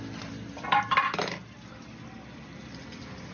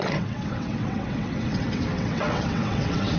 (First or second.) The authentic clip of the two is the first